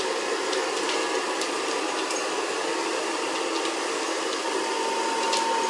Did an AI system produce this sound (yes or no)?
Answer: no